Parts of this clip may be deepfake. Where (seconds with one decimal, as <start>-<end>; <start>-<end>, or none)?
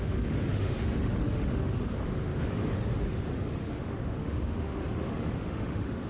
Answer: 0.0-6.1